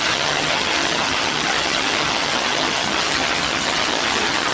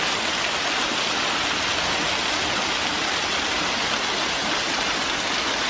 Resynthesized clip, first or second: first